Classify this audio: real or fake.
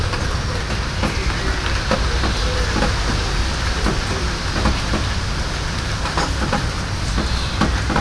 real